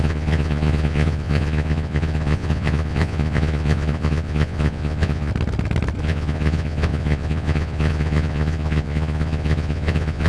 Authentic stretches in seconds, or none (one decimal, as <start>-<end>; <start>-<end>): 5.3-6.0